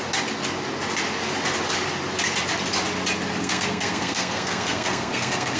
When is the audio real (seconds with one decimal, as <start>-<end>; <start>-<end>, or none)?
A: 0.0-3.4